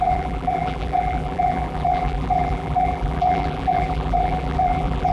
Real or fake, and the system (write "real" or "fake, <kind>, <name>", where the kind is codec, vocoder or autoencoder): fake, vocoder, BigVGAN v2